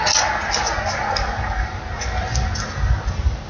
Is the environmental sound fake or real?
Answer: real